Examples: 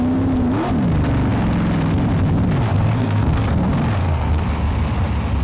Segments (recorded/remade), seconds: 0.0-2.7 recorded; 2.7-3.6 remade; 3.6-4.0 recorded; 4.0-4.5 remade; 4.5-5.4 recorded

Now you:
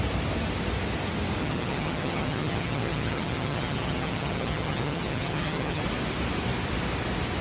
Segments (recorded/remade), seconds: 0.0-1.4 recorded; 1.4-5.8 remade; 5.8-7.4 recorded